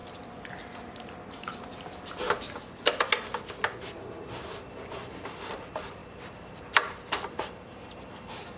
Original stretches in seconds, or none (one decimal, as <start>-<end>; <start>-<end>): 0.0-6.0; 7.3-8.6